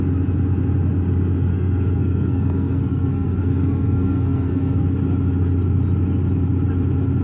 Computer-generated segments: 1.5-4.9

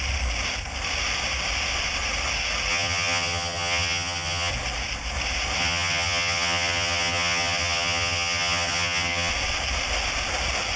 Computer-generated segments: 2.7-4.5; 5.6-9.3